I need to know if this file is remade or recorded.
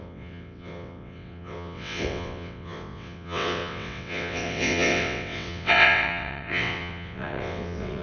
remade